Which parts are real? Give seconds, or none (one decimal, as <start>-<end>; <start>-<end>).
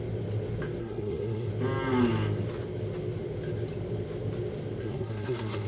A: 0.0-0.8; 1.5-4.8